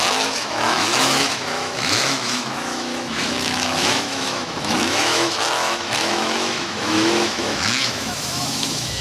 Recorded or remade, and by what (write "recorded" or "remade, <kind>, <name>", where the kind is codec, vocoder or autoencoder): remade, autoencoder, DAC-VAE